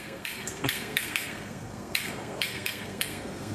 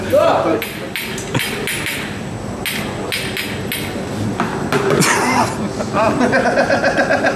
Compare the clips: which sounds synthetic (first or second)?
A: first